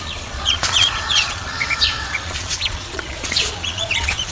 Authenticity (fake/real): fake